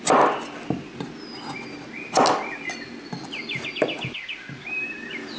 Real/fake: real